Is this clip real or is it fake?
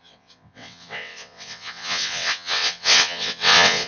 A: fake